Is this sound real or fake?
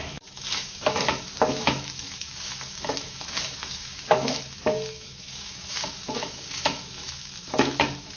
fake